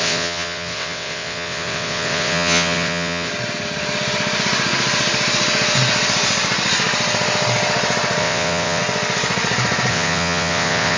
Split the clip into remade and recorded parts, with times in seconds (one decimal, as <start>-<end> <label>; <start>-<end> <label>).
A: 0.0-3.3 remade; 3.3-8.2 recorded; 8.2-8.8 remade; 8.8-9.9 recorded; 9.9-11.0 remade